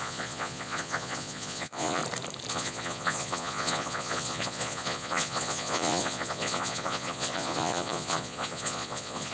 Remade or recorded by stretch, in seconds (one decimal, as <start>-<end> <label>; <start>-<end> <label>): 0.0-2.0 remade; 2.0-2.5 recorded; 2.5-9.3 remade